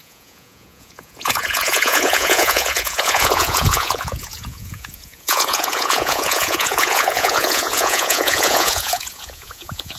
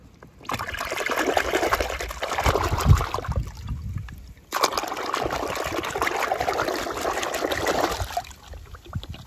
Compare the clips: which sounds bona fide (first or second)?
second